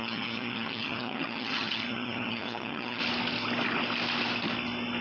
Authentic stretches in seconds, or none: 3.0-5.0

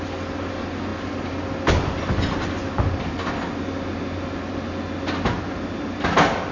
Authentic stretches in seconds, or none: 0.0-6.5

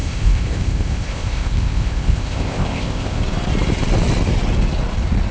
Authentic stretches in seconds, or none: 3.2-5.3

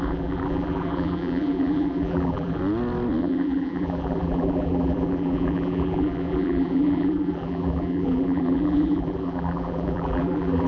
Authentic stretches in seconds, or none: 2.6-3.2

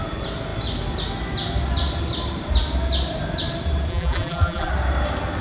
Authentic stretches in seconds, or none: 0.0-3.9; 4.7-5.4